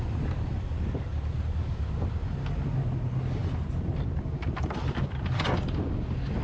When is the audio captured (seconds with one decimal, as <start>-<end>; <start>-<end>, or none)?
0.0-6.4